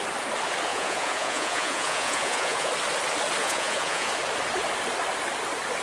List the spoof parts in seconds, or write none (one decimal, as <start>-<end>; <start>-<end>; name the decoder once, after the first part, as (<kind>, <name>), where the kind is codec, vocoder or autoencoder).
0.7-2.7 (vocoder, Vocos); 3.4-4.1